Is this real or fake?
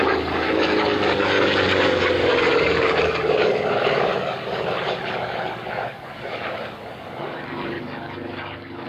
fake